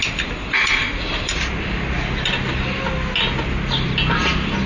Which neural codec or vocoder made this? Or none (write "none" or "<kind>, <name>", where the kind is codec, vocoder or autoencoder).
none